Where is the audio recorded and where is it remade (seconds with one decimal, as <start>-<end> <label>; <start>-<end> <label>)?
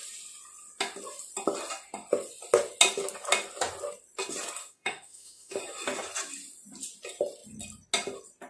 0.0-4.6 recorded; 4.6-5.6 remade; 5.6-8.5 recorded